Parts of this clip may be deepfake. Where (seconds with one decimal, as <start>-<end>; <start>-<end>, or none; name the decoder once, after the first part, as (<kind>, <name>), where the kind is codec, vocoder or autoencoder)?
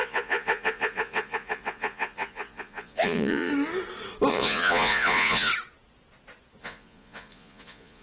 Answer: 0.0-3.5 (vocoder, Vocos); 4.3-5.5; 6.6-8.0